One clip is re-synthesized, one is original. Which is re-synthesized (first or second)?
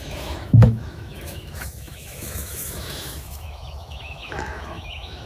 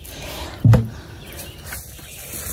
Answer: first